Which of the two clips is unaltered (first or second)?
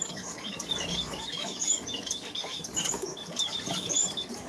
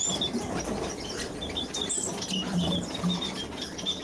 second